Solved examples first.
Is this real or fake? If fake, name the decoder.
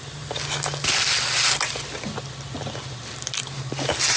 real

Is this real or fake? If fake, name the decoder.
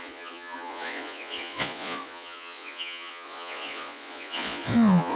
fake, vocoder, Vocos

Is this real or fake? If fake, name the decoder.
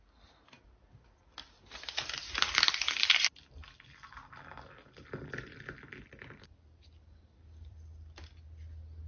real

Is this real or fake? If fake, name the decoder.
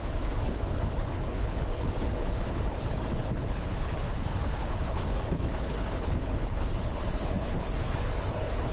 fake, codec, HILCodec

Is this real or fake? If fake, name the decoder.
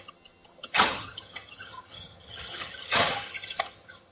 fake, vocoder, HiFi-GAN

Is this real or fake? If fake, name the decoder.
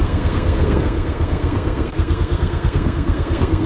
fake, codec, SNAC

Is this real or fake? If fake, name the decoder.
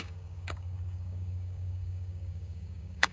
fake, codec, DAC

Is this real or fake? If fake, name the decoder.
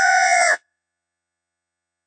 fake, vocoder, Vocos